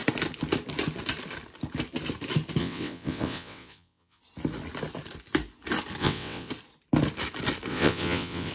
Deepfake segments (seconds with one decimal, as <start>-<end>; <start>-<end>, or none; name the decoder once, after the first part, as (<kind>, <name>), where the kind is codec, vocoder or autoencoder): 2.6-4.2 (vocoder, WaveNeXt); 6.0-6.5; 7.7-8.5